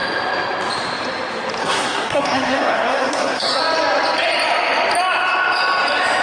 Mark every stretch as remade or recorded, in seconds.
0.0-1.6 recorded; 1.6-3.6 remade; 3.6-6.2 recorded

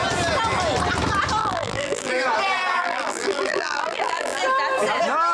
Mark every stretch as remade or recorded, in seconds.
0.0-1.4 recorded; 1.4-2.1 remade; 2.1-2.8 recorded; 2.8-4.4 remade; 4.4-5.3 recorded

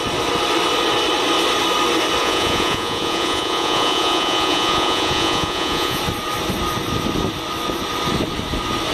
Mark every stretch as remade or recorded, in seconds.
0.0-2.2 recorded; 2.2-6.0 remade; 6.0-8.9 recorded

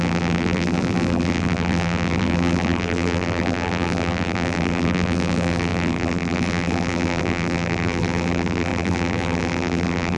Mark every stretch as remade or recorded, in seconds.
0.0-10.2 remade